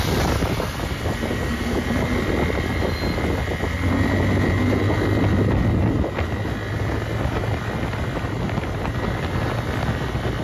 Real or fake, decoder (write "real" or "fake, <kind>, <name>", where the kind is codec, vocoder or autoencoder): real